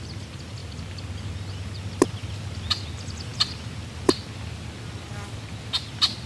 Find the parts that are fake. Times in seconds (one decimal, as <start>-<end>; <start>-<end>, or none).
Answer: none